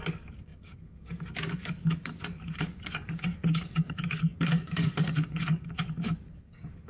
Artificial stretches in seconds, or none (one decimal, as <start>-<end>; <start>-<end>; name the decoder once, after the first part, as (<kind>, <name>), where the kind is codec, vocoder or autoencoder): 0.0-6.9 (codec, DAC)